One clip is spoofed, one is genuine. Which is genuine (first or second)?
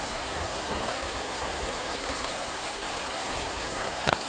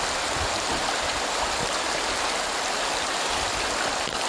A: second